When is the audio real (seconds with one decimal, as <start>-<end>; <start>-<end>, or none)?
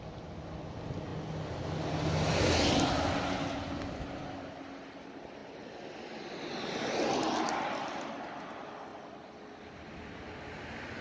0.0-8.9; 10.4-11.0